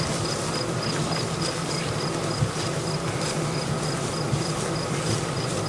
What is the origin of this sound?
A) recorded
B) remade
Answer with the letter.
A